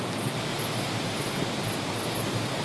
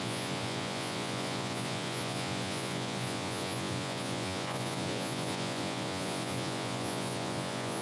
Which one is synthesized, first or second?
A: second